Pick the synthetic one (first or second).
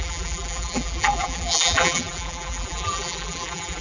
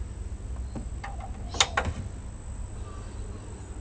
first